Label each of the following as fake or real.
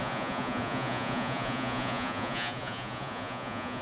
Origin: fake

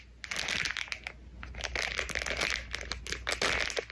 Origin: real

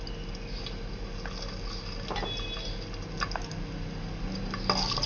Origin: real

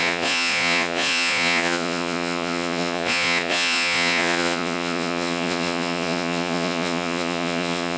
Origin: fake